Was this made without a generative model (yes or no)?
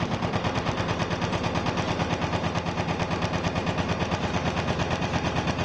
yes